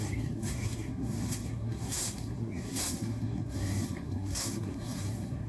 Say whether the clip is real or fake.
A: fake